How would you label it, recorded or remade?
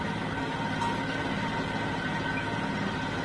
recorded